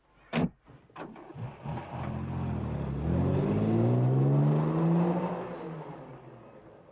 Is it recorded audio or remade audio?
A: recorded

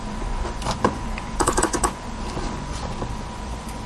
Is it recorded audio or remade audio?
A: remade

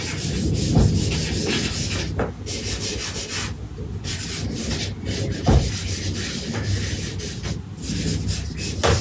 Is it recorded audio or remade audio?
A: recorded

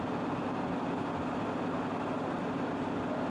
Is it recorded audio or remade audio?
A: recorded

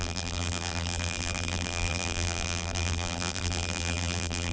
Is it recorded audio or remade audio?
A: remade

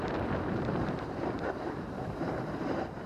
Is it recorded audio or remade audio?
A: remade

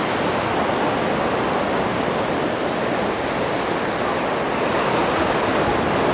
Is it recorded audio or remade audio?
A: recorded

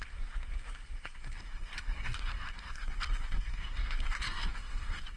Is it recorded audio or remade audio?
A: remade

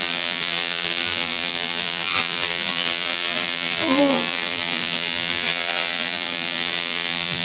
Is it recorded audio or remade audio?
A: remade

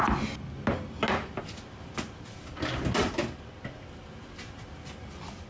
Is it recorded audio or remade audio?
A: recorded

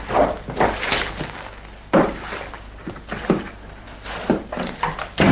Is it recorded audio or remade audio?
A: recorded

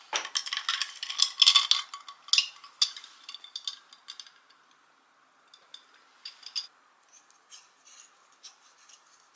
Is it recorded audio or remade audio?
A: recorded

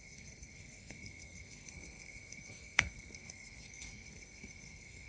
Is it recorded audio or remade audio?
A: remade